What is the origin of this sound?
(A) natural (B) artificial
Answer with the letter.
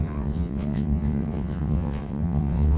B